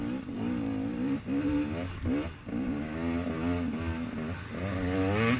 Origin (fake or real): real